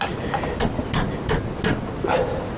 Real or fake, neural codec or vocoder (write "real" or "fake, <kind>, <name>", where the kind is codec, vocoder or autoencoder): real